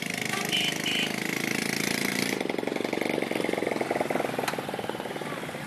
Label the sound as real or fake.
real